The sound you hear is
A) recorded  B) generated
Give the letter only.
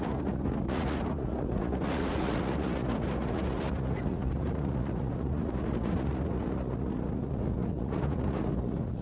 B